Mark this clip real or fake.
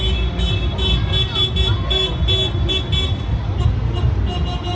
real